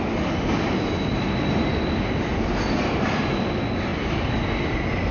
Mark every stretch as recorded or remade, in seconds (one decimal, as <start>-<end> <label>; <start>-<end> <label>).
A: 0.0-5.1 recorded